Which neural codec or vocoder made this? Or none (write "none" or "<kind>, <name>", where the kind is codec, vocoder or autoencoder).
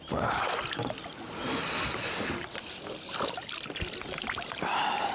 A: none